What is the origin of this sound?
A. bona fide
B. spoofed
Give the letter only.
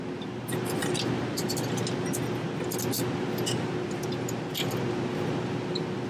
A